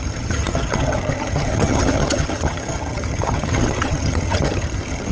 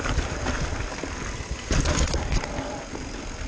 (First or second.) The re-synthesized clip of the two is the first